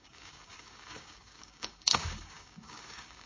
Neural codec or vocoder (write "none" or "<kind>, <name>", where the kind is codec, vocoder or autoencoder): codec, DAC